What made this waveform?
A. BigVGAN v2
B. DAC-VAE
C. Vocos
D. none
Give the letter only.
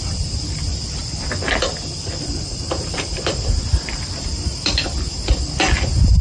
A